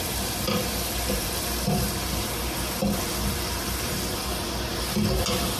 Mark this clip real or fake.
real